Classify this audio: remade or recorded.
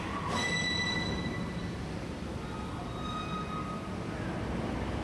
recorded